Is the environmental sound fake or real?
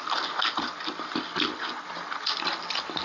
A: real